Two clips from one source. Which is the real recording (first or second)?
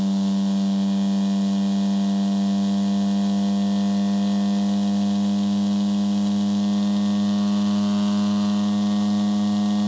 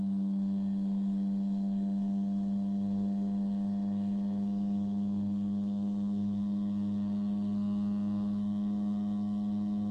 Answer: first